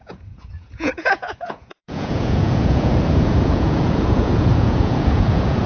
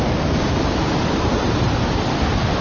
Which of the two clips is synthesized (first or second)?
first